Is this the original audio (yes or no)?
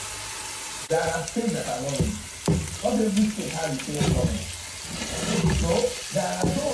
yes